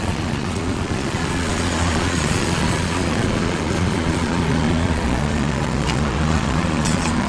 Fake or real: fake